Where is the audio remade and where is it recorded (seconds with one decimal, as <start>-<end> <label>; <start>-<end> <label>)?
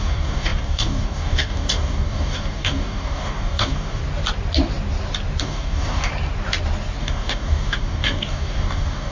0.0-4.0 remade; 4.0-5.4 recorded; 5.4-6.1 remade; 6.1-7.0 recorded; 7.0-9.1 remade